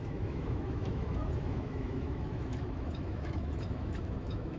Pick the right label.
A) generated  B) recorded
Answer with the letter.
A